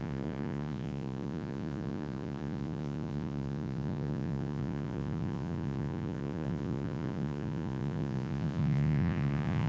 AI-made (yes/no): yes